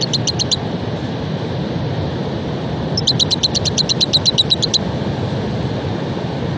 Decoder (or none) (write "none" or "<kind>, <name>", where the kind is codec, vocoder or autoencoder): none